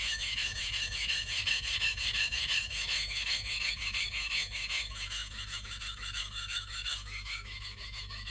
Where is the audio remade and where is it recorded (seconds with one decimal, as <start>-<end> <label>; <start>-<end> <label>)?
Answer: 0.0-8.3 remade